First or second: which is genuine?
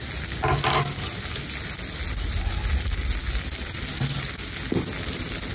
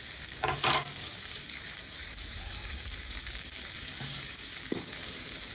first